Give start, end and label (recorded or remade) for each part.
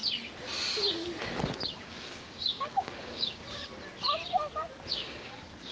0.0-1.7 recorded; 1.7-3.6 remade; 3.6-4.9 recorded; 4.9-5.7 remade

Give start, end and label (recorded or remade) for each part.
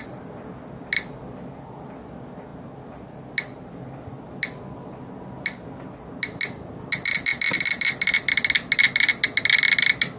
0.0-10.2 recorded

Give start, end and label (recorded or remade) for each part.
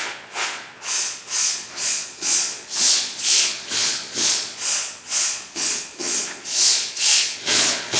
0.0-8.0 remade